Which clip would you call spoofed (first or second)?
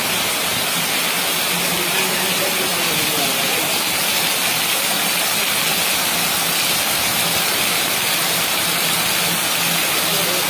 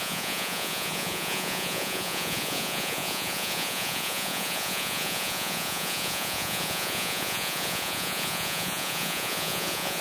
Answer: second